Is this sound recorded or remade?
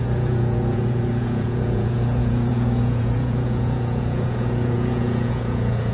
remade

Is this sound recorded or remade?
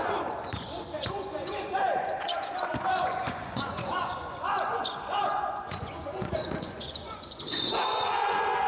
remade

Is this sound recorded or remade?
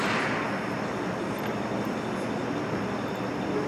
recorded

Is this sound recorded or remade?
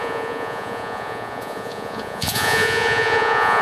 remade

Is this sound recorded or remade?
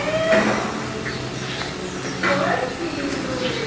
recorded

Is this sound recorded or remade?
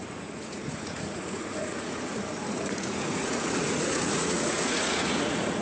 remade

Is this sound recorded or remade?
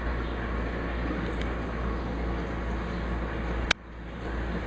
recorded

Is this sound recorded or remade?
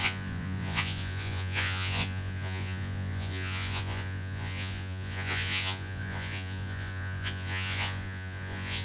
remade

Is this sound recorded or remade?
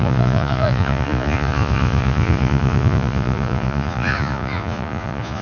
remade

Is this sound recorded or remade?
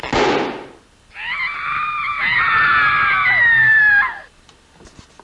recorded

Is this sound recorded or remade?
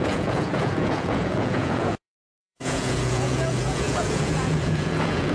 remade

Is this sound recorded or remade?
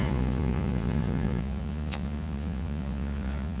remade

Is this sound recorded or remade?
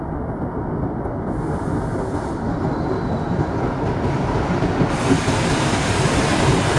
recorded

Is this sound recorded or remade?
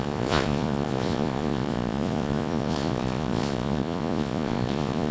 remade